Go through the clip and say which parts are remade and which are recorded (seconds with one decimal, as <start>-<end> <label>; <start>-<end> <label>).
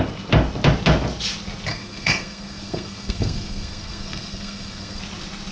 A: 0.0-1.7 recorded; 1.7-5.0 remade; 5.0-5.5 recorded